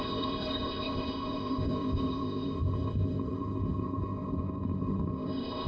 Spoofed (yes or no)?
yes